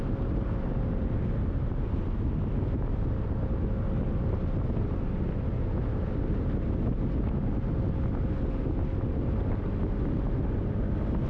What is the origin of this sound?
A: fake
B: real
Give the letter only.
B